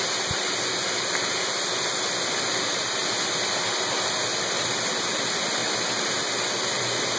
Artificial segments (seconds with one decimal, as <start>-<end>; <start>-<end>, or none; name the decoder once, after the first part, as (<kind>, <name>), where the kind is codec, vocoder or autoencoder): none